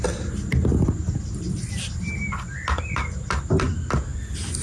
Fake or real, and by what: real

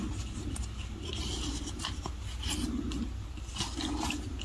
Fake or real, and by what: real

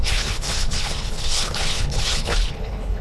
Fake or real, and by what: fake, codec, HILCodec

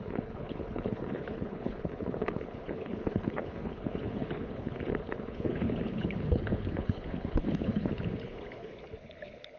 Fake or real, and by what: fake, codec, HILCodec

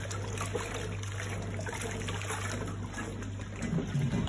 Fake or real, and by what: real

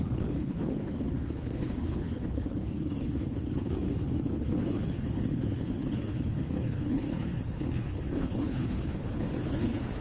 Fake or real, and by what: fake, codec, HILCodec